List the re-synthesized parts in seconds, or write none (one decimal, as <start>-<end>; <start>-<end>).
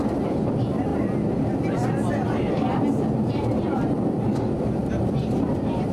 0.0-0.9; 3.3-5.9